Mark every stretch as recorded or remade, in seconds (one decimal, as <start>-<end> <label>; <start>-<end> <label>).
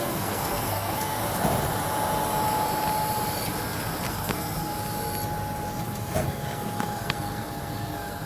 0.0-1.2 remade; 1.2-4.1 recorded; 4.1-4.7 remade; 4.7-5.7 recorded; 5.7-8.3 remade